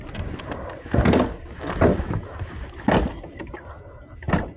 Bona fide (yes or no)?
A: yes